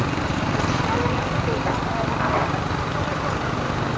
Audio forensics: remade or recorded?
recorded